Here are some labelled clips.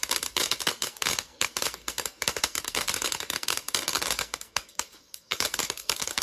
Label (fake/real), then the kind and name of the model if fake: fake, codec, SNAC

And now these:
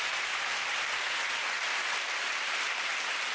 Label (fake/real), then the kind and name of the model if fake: real